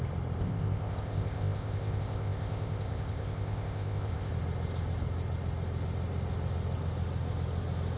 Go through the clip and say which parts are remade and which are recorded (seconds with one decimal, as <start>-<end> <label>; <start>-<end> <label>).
0.0-0.4 recorded; 0.4-4.3 remade; 4.3-8.0 recorded